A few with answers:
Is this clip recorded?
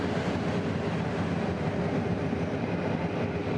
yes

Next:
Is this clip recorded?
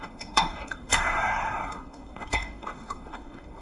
no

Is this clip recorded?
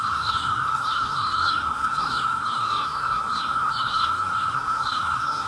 no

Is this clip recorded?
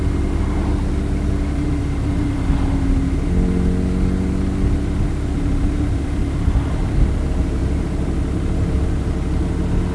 yes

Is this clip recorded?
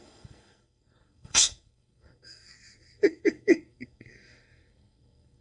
no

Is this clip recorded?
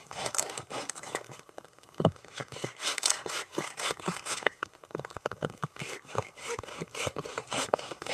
no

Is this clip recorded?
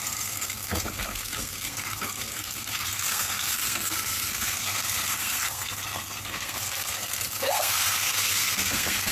no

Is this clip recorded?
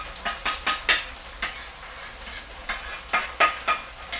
yes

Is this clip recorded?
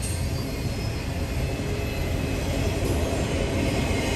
yes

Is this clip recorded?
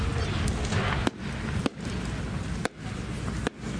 yes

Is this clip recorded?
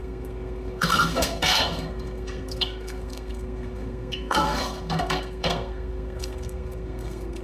no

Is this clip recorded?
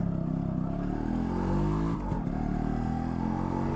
yes